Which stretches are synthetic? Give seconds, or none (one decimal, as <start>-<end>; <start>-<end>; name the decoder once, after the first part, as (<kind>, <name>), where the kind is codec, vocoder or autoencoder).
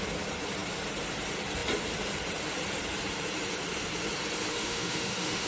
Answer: 4.5-5.5 (autoencoder, DAC-VAE)